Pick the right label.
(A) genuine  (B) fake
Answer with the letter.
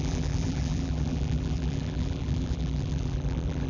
B